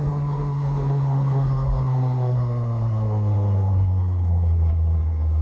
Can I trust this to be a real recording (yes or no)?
no